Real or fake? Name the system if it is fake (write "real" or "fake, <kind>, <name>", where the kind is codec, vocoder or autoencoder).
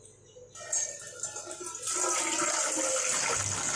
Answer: real